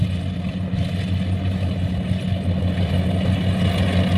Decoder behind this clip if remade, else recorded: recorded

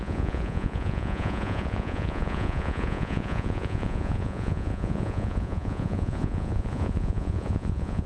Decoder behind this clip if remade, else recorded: remade, vocoder, Vocos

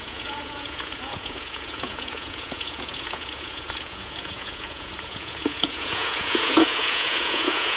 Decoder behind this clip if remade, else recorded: remade, vocoder, Vocos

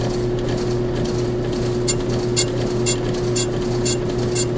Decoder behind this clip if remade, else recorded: recorded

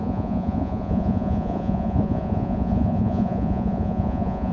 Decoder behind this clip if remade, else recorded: remade, vocoder, Vocos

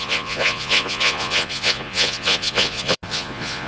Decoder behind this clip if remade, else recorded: remade, vocoder, Vocos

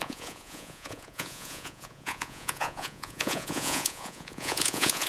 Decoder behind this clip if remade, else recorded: remade, vocoder, Vocos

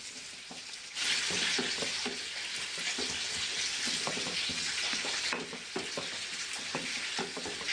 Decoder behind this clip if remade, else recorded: recorded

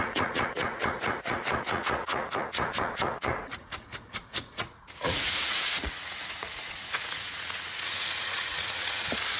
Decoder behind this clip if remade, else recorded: remade, vocoder, Vocos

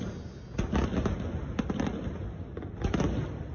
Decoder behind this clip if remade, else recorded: recorded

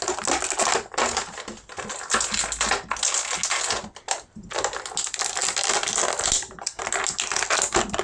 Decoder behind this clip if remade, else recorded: recorded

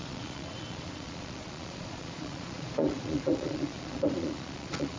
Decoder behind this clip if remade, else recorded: remade, vocoder, Vocos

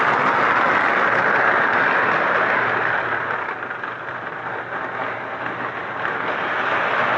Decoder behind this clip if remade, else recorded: recorded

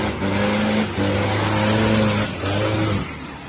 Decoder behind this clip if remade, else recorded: recorded